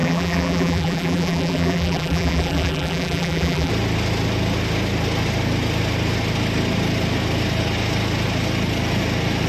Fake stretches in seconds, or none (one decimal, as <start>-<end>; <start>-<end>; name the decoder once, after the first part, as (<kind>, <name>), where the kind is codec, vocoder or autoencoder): 0.0-3.7 (vocoder, BigVGAN v2)